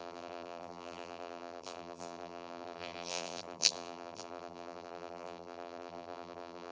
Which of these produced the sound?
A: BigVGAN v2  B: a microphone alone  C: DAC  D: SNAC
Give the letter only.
A